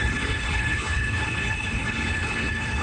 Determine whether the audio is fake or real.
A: fake